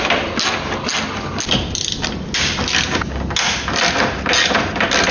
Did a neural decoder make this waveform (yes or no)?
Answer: no